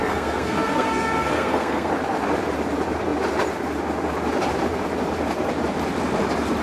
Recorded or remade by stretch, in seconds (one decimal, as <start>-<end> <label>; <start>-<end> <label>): 0.0-1.9 remade; 1.9-6.6 recorded